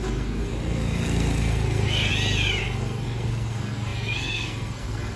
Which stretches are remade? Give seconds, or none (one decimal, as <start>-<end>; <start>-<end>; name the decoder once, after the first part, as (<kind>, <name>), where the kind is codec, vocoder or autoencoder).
0.0-2.1 (codec, SNAC); 2.6-5.2